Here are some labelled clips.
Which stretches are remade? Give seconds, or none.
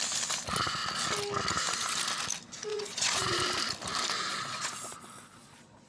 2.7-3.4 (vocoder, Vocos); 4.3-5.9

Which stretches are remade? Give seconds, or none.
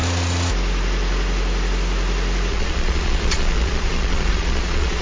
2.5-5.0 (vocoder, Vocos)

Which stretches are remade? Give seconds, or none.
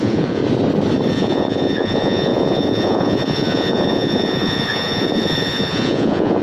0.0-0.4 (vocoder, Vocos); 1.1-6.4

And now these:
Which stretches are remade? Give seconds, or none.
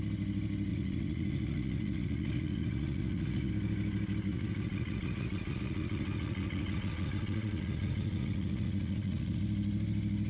0.7-3.5 (vocoder, Vocos); 4.3-9.4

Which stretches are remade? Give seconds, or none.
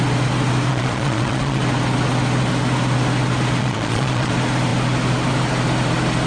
0.7-1.6 (vocoder, Vocos); 3.6-4.3